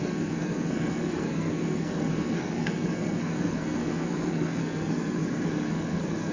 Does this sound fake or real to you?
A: fake